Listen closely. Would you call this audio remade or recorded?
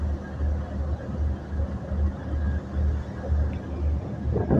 recorded